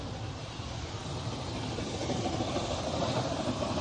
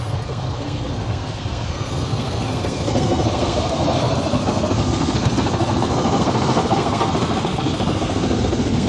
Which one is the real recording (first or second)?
first